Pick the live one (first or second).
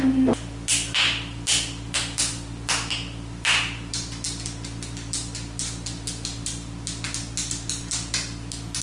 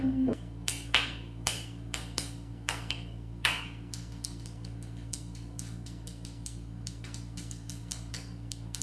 first